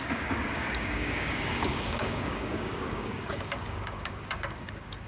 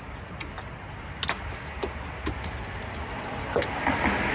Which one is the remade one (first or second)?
first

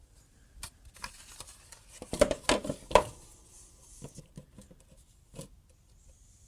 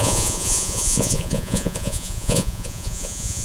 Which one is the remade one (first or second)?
second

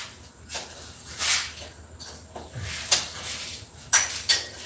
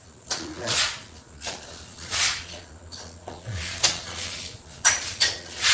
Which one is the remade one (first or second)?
second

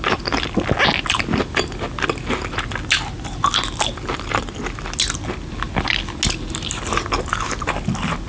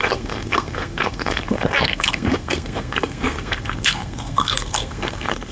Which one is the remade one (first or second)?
second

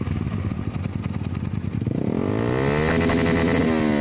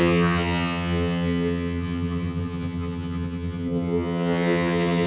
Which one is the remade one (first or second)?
second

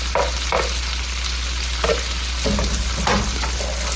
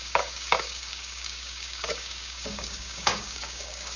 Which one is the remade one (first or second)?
second